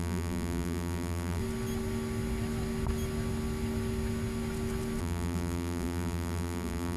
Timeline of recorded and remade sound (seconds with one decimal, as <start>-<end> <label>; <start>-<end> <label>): 0.0-1.4 remade; 1.4-5.0 recorded; 5.0-7.0 remade

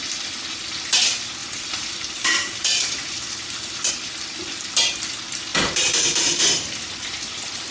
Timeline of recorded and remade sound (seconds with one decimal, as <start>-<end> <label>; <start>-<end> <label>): 0.0-1.4 recorded; 1.4-3.9 remade; 3.9-5.5 recorded; 5.5-6.4 remade; 6.4-7.7 recorded

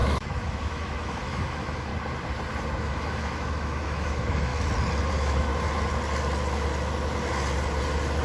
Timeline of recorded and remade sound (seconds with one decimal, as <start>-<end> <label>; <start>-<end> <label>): 0.0-1.9 remade; 1.9-2.8 recorded; 2.8-4.5 remade; 4.5-5.1 recorded; 5.1-5.5 remade; 5.5-8.2 recorded

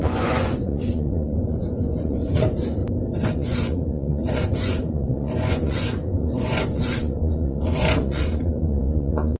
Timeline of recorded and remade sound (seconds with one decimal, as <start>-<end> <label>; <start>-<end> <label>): 0.0-2.8 remade; 2.8-3.3 recorded; 3.3-9.4 remade

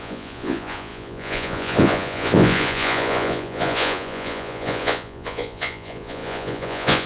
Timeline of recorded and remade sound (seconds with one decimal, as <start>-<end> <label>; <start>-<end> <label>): 0.0-7.1 remade

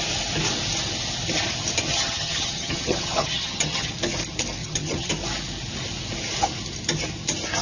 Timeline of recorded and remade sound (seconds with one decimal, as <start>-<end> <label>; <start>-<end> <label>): 0.0-1.9 recorded; 1.9-3.9 remade; 3.9-4.6 recorded; 4.6-5.1 remade; 5.1-7.6 recorded